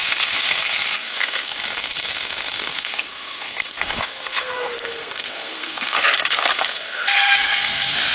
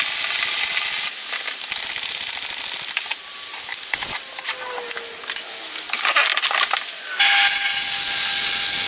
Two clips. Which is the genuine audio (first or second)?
second